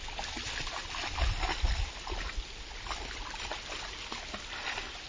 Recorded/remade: recorded